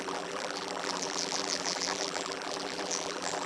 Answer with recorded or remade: remade